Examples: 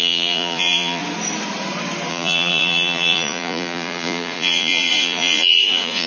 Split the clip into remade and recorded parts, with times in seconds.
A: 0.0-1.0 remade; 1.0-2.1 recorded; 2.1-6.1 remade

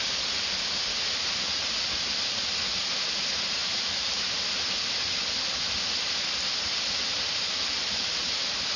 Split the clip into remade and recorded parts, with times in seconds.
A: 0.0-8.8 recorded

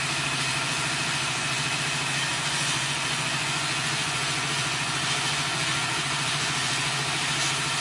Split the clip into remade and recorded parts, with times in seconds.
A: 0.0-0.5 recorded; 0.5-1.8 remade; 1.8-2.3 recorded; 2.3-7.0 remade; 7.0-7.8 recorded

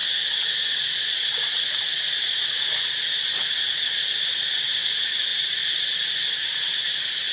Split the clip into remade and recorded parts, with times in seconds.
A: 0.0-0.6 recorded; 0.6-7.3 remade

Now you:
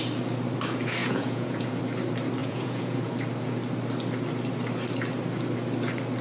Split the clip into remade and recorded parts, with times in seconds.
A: 0.0-1.0 recorded; 1.0-1.8 remade; 1.8-2.4 recorded; 2.4-3.1 remade; 3.1-6.2 recorded

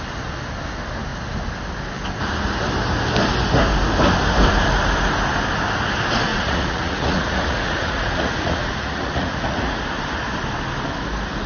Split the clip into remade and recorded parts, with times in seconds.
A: 0.0-6.3 recorded; 6.3-9.8 remade; 9.8-11.5 recorded

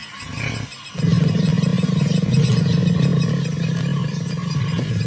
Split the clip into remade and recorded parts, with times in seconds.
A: 0.0-5.1 recorded

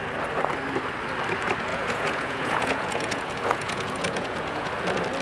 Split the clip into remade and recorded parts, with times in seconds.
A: 0.0-1.7 recorded; 1.7-4.7 remade; 4.7-5.2 recorded